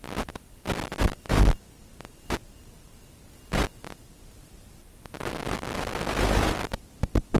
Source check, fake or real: real